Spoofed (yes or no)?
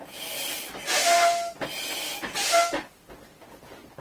no